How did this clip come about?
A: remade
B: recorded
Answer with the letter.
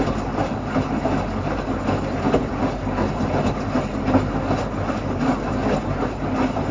B